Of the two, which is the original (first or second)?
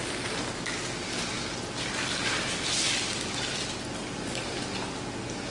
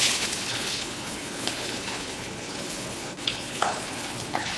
first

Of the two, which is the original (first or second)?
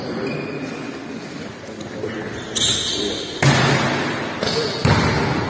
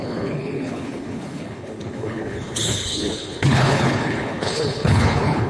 first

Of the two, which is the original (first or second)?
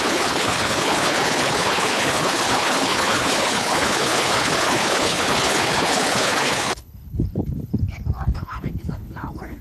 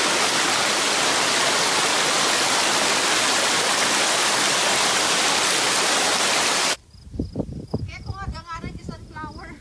second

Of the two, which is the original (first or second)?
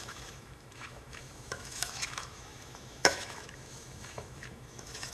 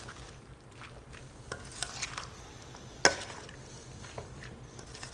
second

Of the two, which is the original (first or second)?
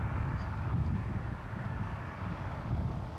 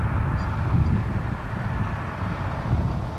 second